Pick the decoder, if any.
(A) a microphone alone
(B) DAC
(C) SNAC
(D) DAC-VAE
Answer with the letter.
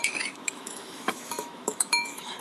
D